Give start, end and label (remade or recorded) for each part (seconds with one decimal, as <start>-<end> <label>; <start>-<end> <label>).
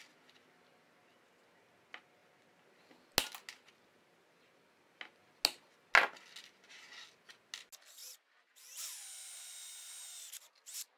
0.0-11.0 recorded